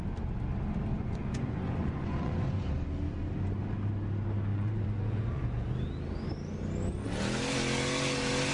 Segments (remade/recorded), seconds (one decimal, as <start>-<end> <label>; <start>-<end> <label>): 0.0-0.9 recorded; 0.9-2.7 remade; 2.7-4.5 recorded; 4.5-5.7 remade; 5.7-8.5 recorded